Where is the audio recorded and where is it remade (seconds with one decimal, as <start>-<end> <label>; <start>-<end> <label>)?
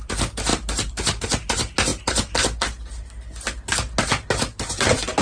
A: 0.0-0.5 recorded; 0.5-1.2 remade; 1.2-5.2 recorded